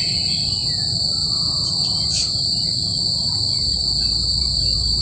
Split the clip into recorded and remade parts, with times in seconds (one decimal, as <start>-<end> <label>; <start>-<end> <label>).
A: 0.0-0.6 remade; 0.6-3.6 recorded; 3.6-5.0 remade